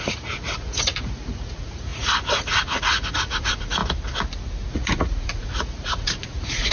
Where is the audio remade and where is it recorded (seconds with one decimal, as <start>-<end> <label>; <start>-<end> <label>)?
0.0-3.8 remade; 3.8-4.7 recorded; 4.7-6.7 remade